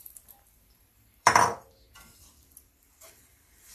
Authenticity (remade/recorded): remade